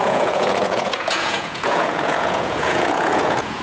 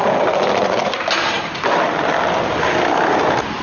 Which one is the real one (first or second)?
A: second